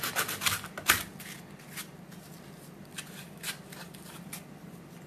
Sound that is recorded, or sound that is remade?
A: recorded